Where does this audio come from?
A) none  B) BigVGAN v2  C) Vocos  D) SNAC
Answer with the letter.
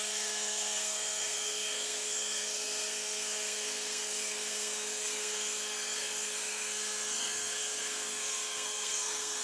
D